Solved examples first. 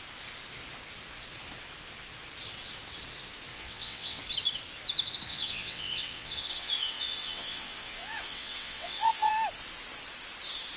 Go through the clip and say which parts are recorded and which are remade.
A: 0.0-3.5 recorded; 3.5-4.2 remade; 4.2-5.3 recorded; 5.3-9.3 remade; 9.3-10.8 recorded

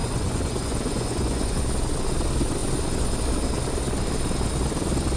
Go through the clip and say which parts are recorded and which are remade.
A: 0.0-1.6 remade; 1.6-5.2 recorded